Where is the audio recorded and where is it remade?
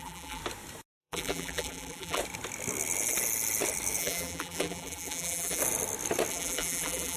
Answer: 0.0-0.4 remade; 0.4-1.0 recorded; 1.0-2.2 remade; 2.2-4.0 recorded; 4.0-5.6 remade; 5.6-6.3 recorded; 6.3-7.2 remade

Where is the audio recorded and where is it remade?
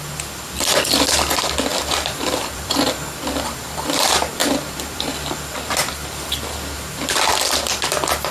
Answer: 0.0-1.7 recorded; 1.7-4.0 remade; 4.0-4.4 recorded; 4.4-5.1 remade; 5.1-8.3 recorded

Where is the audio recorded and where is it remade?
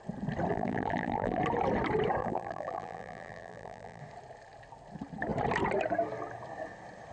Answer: 0.0-0.5 recorded; 0.5-1.4 remade; 1.4-2.2 recorded; 2.2-4.0 remade; 4.0-7.1 recorded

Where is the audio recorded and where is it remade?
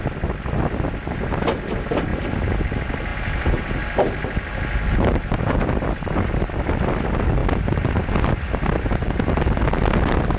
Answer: 0.0-2.1 remade; 2.1-2.6 recorded; 2.6-3.1 remade; 3.1-5.1 recorded; 5.1-7.4 remade; 7.4-9.3 recorded; 9.3-10.4 remade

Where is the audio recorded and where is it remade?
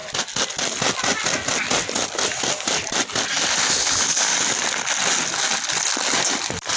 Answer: 0.0-6.8 recorded